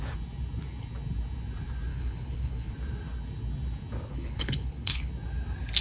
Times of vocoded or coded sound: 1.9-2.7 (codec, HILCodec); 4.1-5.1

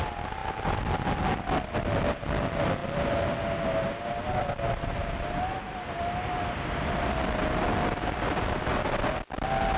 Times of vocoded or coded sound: none

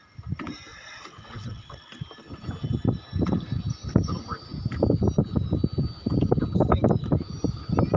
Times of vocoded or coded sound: 0.7-1.9 (vocoder, WaveNeXt)

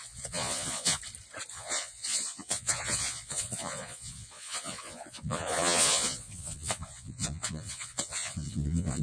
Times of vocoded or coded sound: 0.0-1.0 (vocoder, Vocos); 1.5-9.0

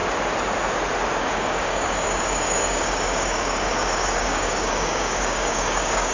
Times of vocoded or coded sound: 1.2-6.1 (codec, DAC)

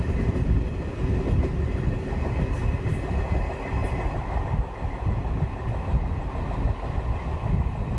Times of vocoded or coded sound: none

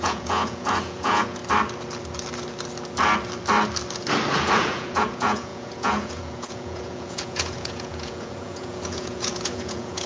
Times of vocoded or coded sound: 0.0-1.4 (vocoder, Vocos); 4.3-10.1

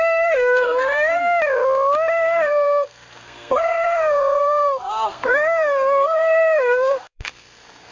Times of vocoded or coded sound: 0.0-1.2 (codec, SNAC); 2.1-7.9